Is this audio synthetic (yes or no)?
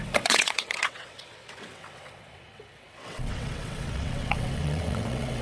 yes